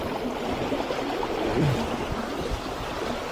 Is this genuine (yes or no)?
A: no